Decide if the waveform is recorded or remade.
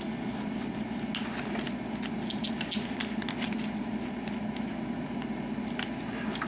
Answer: recorded